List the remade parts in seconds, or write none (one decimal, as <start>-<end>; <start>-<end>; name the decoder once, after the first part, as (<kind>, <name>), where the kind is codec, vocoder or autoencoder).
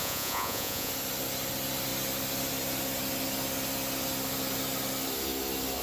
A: 0.0-0.9 (vocoder, Vocos)